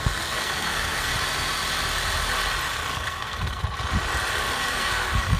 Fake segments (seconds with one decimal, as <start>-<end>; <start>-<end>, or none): 0.0-1.1; 2.9-3.6; 4.5-5.4